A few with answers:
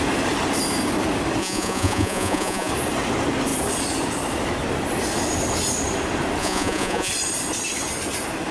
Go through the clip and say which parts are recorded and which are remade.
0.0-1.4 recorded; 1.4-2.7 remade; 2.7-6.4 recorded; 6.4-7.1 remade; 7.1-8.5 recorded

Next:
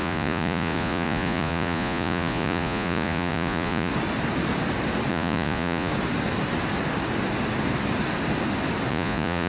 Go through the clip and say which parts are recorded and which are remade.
0.0-3.9 remade; 3.9-5.1 recorded; 5.1-5.9 remade; 5.9-8.9 recorded; 8.9-9.5 remade

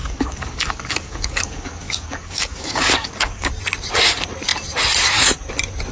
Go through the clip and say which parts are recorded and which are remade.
0.0-3.5 remade; 3.5-5.9 recorded

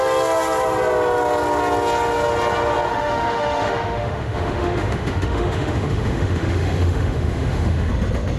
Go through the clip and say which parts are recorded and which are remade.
0.0-2.9 recorded; 2.9-7.9 remade; 7.9-8.4 recorded

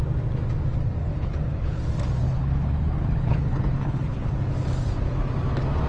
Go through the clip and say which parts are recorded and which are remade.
0.0-1.1 recorded; 1.1-1.8 remade; 1.8-2.2 recorded; 2.2-4.3 remade; 4.3-5.9 recorded

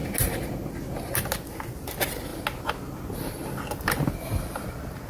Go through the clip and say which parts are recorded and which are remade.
0.0-5.1 recorded

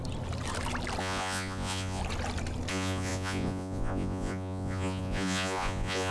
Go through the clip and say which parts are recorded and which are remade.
0.0-1.0 recorded; 1.0-2.0 remade; 2.0-2.7 recorded; 2.7-6.1 remade